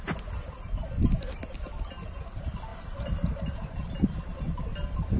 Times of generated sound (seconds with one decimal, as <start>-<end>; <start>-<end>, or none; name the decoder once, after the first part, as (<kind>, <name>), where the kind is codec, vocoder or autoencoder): 2.7-4.2 (vocoder, BigVGAN v2)